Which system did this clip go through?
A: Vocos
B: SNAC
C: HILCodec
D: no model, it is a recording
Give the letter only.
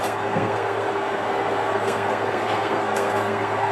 B